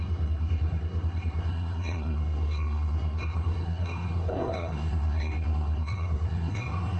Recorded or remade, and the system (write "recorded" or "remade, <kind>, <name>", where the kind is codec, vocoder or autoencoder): remade, codec, SNAC